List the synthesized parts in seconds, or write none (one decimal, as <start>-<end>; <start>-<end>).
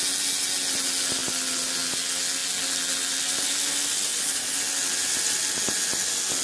4.1-4.6